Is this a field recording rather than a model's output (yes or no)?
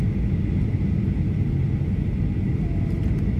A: yes